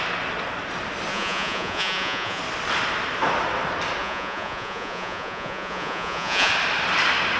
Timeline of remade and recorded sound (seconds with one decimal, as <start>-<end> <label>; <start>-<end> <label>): 0.0-1.1 recorded; 1.1-2.4 remade; 2.4-4.0 recorded; 4.0-6.5 remade; 6.5-7.4 recorded